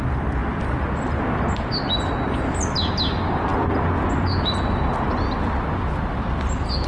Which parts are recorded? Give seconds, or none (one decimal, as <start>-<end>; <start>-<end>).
0.0-6.9